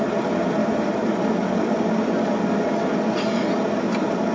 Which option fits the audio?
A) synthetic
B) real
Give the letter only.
B